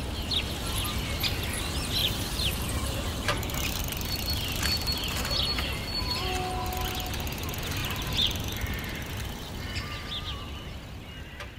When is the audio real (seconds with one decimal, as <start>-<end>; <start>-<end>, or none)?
0.0-2.0; 3.8-7.8; 8.7-11.6